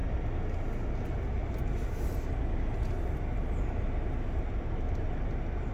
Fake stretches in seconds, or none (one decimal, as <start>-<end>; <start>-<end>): none